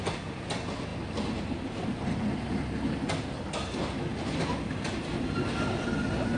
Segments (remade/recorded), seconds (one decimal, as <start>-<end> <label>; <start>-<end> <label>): 0.0-6.4 recorded